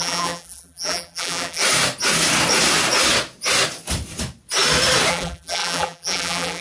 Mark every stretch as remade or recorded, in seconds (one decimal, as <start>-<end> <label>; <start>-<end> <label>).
0.0-1.6 remade; 1.6-5.1 recorded; 5.1-6.6 remade

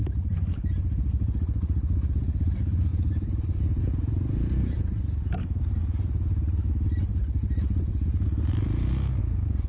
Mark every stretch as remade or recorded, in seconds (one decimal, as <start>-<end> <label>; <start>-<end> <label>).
0.0-0.5 recorded; 0.5-5.8 remade; 5.8-9.2 recorded; 9.2-9.7 remade